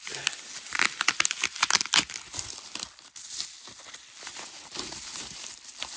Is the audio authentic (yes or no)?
yes